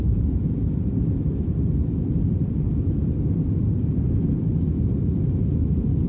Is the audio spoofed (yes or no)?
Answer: yes